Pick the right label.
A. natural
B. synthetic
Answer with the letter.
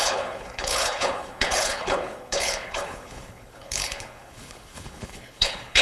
B